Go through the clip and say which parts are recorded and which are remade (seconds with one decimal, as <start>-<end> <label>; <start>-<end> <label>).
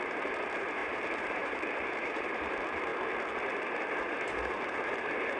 0.0-2.9 remade; 2.9-4.0 recorded; 4.0-5.4 remade